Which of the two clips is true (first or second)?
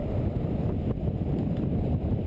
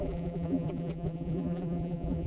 first